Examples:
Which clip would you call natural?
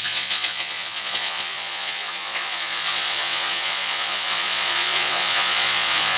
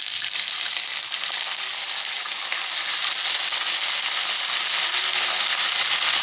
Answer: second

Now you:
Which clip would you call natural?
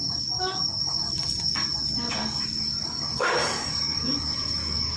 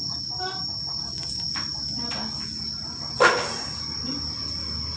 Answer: second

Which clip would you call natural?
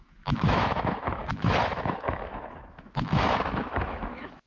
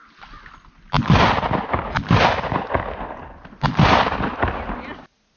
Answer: second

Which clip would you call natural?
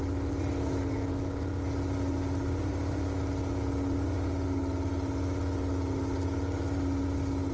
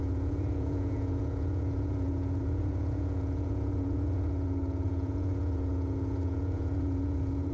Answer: first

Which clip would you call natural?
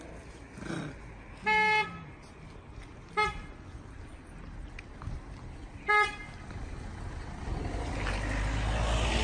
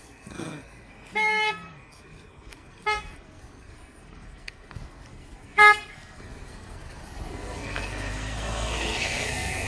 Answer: first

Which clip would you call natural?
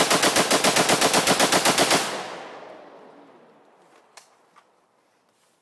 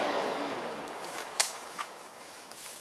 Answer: first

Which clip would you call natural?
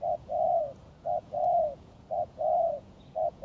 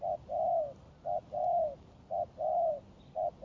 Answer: second